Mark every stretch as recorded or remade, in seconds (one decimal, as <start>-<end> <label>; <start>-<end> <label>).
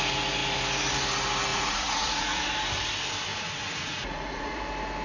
0.0-1.5 recorded; 1.5-2.4 remade; 2.4-3.3 recorded; 3.3-4.6 remade; 4.6-5.0 recorded